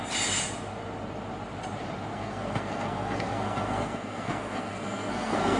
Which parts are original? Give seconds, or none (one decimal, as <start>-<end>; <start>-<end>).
0.0-2.1